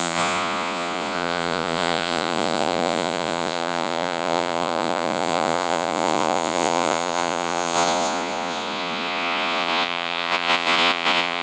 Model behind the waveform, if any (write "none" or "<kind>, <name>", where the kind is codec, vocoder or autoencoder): vocoder, Vocos